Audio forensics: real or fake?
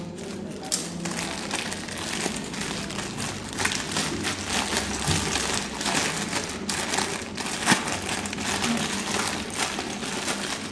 real